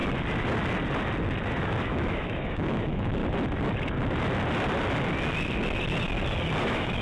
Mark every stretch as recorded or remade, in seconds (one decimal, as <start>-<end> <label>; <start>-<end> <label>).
0.0-1.8 recorded; 1.8-3.2 remade; 3.2-6.6 recorded; 6.6-7.0 remade